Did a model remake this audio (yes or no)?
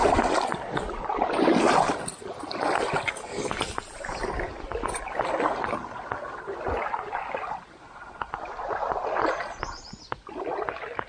no